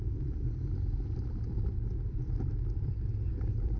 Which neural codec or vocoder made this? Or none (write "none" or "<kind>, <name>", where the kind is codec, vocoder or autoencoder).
none